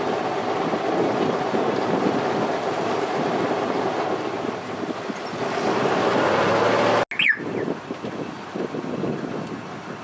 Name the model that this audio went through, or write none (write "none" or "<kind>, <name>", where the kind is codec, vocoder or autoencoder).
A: none